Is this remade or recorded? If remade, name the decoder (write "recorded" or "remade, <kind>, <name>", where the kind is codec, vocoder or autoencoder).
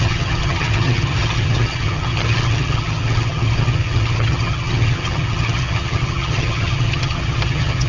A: remade, vocoder, HiFi-GAN